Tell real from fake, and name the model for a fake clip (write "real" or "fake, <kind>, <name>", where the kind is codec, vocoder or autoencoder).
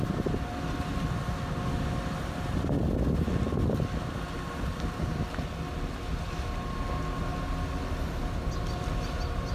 real